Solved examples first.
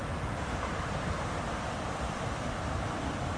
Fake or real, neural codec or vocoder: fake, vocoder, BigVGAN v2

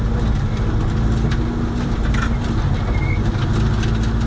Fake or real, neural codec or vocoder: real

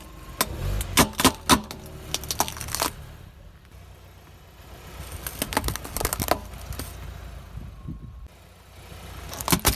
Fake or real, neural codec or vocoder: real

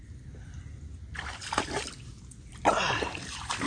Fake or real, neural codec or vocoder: real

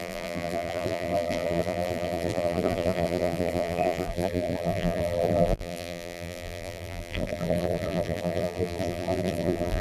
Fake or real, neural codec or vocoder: fake, vocoder, BigVGAN v2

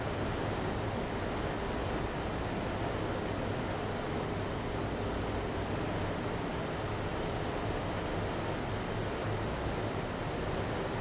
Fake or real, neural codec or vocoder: real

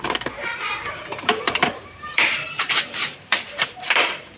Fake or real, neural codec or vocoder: fake, vocoder, BigVGAN v2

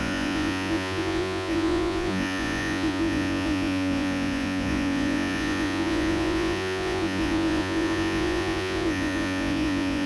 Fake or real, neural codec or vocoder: fake, vocoder, Vocos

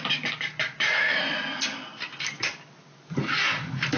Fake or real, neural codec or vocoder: real